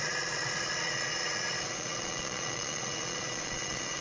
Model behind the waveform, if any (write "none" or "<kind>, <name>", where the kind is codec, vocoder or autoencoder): vocoder, Vocos